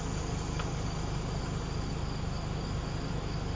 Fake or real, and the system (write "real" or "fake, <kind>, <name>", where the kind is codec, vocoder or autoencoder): real